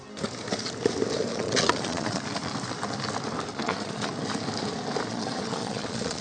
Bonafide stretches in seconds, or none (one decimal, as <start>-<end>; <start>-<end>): 0.0-1.3; 2.2-3.5; 4.1-5.1